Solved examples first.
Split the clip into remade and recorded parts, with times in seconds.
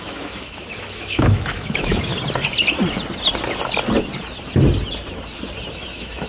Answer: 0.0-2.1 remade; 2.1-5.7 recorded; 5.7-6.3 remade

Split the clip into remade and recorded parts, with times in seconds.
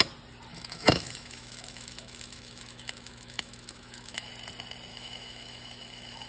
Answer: 0.0-0.5 recorded; 0.5-4.3 remade; 4.3-4.9 recorded; 4.9-6.3 remade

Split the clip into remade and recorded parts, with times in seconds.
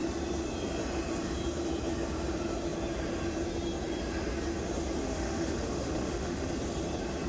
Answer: 0.0-5.0 recorded; 5.0-6.5 remade; 6.5-7.3 recorded